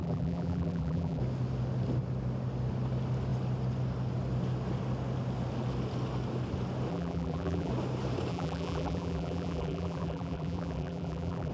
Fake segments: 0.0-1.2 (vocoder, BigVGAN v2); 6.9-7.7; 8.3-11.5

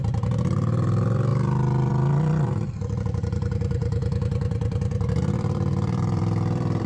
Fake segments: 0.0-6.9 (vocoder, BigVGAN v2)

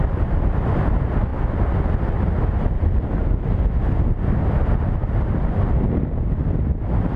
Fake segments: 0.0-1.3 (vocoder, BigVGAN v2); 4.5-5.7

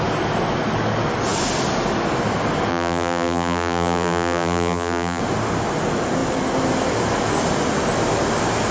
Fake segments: 2.7-5.2 (vocoder, BigVGAN v2)

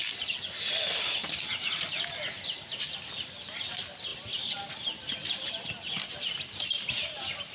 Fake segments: 4.1-5.5 (vocoder, BigVGAN v2)

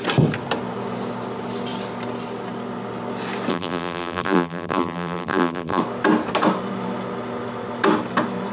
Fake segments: 3.5-5.8 (vocoder, BigVGAN v2)

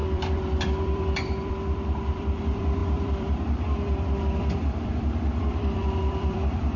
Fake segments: 0.0-6.8 (vocoder, BigVGAN v2)

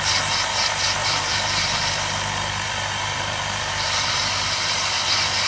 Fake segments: 1.0-4.3 (vocoder, BigVGAN v2)